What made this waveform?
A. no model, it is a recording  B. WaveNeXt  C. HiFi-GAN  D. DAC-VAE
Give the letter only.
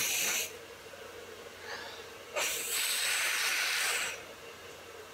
A